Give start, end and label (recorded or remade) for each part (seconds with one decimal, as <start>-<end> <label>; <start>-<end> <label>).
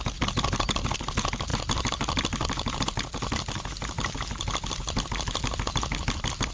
0.0-6.5 recorded